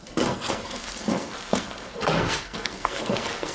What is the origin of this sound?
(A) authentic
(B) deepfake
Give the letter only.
B